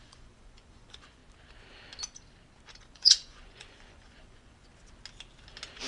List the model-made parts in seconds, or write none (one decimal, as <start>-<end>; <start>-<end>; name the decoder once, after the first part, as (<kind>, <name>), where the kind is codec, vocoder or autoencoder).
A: 0.0-1.2 (vocoder, Vocos); 2.8-4.7

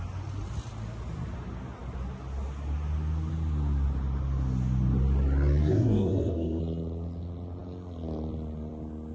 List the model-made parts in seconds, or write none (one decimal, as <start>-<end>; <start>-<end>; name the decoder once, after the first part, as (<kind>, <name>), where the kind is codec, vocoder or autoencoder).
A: 5.6-6.6 (codec, SNAC)

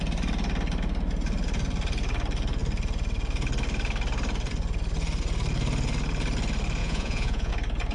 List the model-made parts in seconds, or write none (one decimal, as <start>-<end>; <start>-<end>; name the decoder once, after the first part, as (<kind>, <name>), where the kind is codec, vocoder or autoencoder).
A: 6.8-7.5 (vocoder, Vocos)